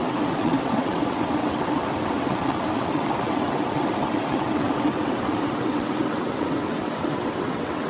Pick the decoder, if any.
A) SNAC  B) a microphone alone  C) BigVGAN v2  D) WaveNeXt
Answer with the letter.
D